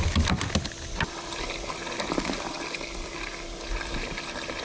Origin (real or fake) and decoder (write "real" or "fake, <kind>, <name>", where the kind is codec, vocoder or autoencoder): real